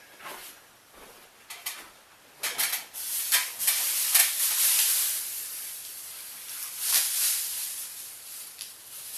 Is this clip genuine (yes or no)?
yes